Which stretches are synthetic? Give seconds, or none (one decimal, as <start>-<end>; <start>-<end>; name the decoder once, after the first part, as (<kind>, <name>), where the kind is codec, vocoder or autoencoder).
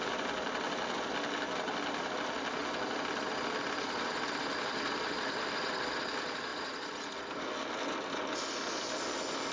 6.5-7.5 (vocoder, BigVGAN v2)